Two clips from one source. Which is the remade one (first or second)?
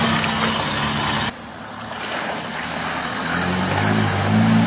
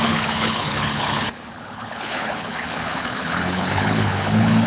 second